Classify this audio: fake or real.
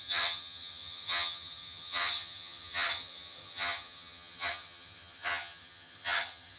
fake